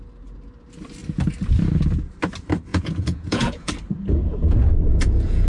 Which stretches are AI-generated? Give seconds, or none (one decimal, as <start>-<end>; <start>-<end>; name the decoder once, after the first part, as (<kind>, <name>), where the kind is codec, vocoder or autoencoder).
2.7-3.7 (vocoder, Vocos); 4.9-5.5